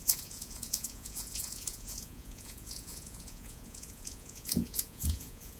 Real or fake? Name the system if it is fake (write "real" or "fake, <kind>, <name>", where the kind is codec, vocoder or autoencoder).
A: fake, vocoder, Vocos